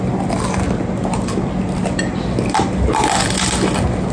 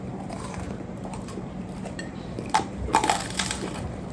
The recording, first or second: first